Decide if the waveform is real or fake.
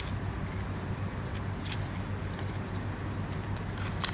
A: real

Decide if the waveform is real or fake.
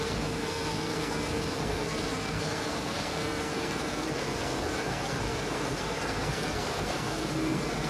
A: fake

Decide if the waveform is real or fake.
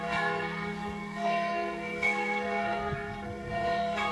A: fake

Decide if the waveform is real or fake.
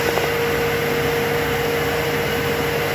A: real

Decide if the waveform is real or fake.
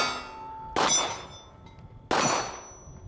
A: real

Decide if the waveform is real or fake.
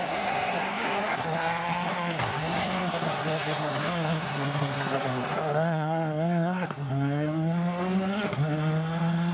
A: fake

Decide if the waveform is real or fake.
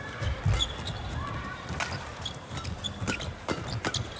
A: real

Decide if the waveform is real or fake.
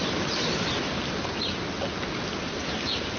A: real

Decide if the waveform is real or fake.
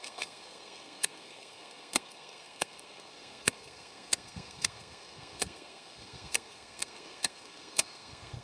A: fake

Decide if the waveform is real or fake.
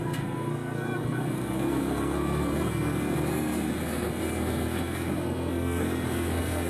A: fake